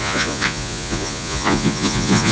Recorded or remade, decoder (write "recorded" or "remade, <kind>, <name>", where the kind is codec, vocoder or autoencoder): remade, vocoder, Vocos